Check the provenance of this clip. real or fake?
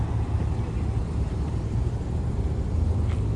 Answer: real